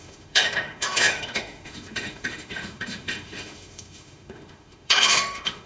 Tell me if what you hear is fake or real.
fake